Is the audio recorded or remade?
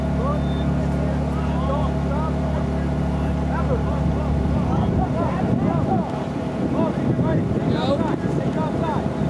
recorded